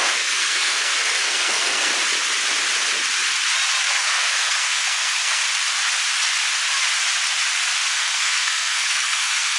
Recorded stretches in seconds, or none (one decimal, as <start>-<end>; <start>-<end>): 1.9-3.8; 5.4-7.9